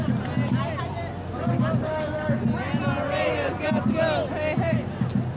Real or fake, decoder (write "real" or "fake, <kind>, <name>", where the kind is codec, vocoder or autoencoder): real